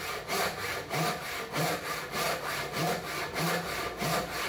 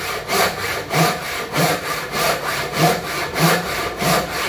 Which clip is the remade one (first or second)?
second